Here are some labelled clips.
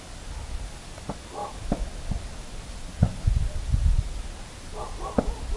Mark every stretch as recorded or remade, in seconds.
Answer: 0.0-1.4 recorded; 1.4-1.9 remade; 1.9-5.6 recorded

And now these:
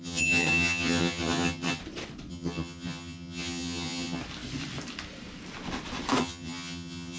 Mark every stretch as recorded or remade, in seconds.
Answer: 0.0-1.8 remade; 1.8-2.3 recorded; 2.3-4.2 remade; 4.2-6.2 recorded; 6.2-7.2 remade

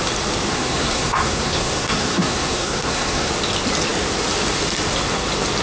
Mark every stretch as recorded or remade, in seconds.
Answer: 0.0-0.5 recorded; 0.5-3.3 remade; 3.3-5.6 recorded

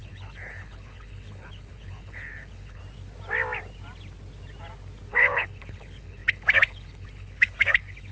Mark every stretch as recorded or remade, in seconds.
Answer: 0.0-2.8 remade; 2.8-5.1 recorded; 5.1-8.1 remade